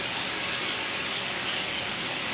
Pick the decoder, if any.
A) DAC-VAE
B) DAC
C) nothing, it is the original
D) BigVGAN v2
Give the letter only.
B